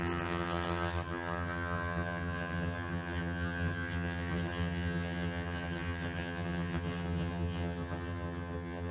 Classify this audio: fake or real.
fake